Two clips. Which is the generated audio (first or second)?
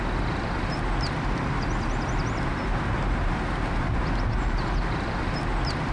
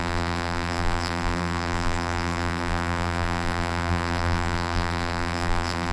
second